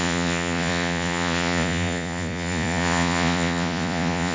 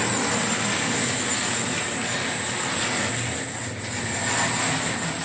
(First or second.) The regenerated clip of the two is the first